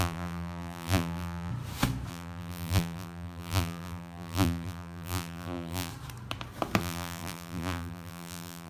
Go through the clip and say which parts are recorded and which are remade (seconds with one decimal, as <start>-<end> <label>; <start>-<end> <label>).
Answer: 0.0-1.5 remade; 1.5-2.1 recorded; 2.1-5.9 remade; 5.9-6.8 recorded; 6.8-8.7 remade